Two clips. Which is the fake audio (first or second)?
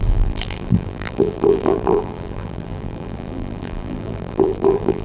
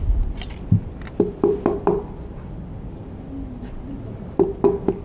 first